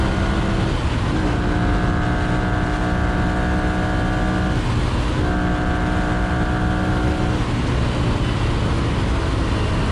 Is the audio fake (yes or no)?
no